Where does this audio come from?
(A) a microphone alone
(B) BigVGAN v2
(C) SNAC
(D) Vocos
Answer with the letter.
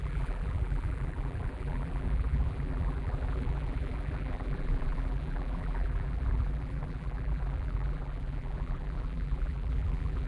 B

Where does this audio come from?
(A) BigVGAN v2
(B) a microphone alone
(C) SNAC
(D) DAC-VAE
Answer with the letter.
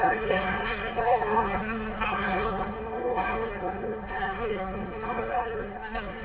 C